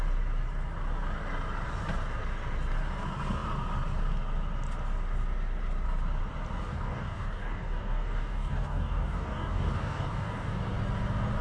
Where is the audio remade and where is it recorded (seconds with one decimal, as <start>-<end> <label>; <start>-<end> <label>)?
0.0-6.7 recorded; 6.7-10.6 remade; 10.6-11.4 recorded